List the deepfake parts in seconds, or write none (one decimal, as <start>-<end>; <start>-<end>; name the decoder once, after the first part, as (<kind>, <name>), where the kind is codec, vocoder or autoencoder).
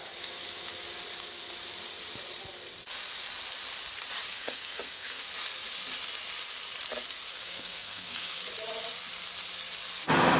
4.3-5.2 (codec, SNAC); 7.3-8.4